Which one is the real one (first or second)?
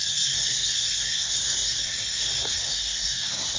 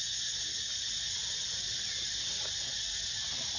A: second